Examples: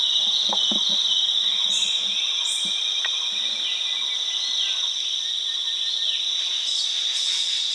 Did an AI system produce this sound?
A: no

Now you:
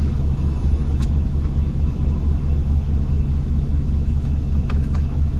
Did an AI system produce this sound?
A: yes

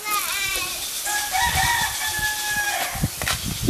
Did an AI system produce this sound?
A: no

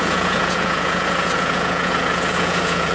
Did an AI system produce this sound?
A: yes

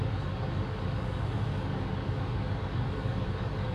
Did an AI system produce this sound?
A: yes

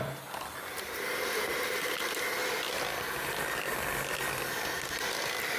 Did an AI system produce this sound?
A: no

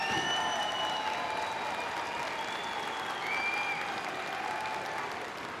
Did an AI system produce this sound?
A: no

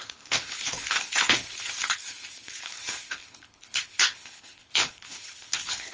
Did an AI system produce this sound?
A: yes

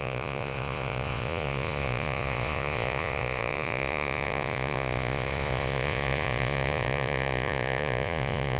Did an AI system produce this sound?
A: yes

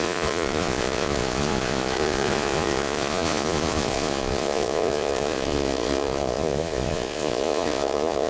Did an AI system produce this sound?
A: yes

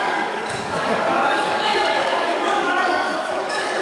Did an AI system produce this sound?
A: yes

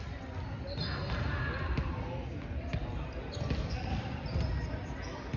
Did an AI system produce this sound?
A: no